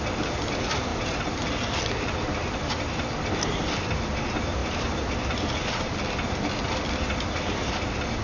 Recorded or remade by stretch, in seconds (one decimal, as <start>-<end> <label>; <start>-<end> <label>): 0.0-0.9 recorded; 0.9-1.8 remade; 1.8-4.6 recorded; 4.6-5.6 remade; 5.6-8.2 recorded